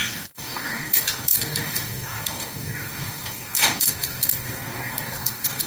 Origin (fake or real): fake